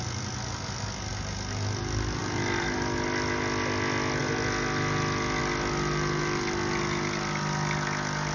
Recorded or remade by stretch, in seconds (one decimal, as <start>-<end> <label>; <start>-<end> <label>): 0.0-8.3 recorded